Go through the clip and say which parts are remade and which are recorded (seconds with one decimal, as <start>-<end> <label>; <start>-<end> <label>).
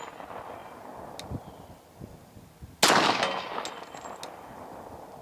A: 0.0-5.2 recorded